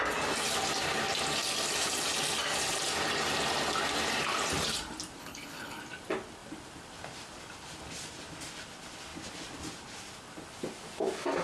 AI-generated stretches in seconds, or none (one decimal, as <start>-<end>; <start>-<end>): 5.2-5.8